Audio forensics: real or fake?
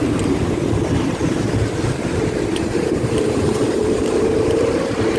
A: fake